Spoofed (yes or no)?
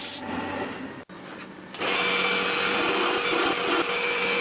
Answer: no